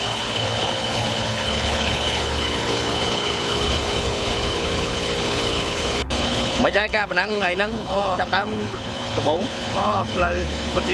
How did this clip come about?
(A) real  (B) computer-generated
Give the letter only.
B